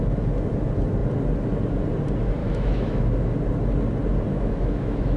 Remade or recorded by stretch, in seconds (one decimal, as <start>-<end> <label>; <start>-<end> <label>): 0.0-2.4 recorded; 2.4-3.0 remade; 3.0-4.3 recorded; 4.3-5.2 remade

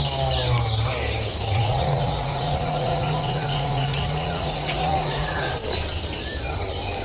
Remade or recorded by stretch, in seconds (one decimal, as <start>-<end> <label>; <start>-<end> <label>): 0.0-1.3 recorded; 1.3-5.5 remade; 5.5-7.0 recorded

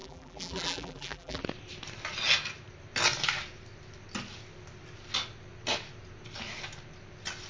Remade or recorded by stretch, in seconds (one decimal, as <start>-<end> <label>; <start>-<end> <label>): 0.0-1.4 remade; 1.4-7.5 recorded

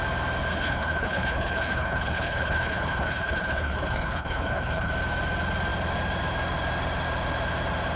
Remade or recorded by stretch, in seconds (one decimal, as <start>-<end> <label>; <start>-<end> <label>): 0.0-0.5 recorded; 0.5-4.9 remade; 4.9-8.0 recorded